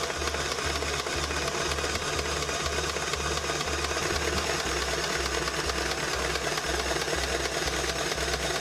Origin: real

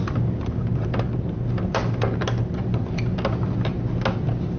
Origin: real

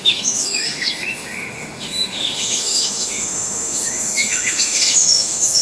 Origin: fake